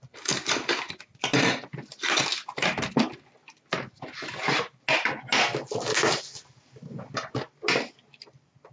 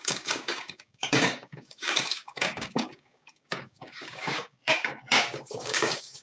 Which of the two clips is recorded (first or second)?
first